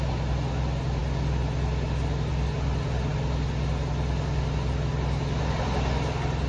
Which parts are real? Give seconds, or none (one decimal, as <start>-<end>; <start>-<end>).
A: 0.0-6.5